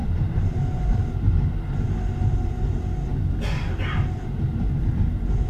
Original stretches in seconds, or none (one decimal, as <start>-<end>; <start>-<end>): 1.0-5.5